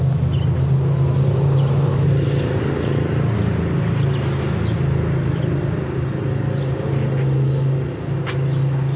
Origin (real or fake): real